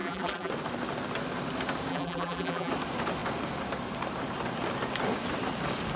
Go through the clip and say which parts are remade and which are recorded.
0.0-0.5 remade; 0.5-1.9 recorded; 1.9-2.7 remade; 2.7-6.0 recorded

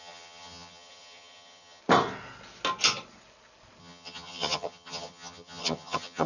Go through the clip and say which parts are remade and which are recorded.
0.0-1.8 remade; 1.8-3.8 recorded; 3.8-6.3 remade

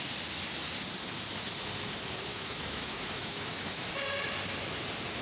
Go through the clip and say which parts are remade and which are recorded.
0.0-2.3 recorded; 2.3-3.9 remade; 3.9-5.2 recorded

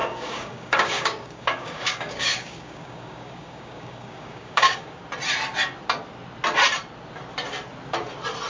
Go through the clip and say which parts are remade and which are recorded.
0.0-5.0 remade; 5.0-8.5 recorded

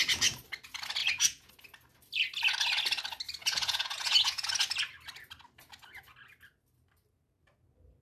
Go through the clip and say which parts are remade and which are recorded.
0.0-1.0 recorded; 1.0-1.5 remade; 1.5-3.4 recorded; 3.4-4.5 remade; 4.5-8.0 recorded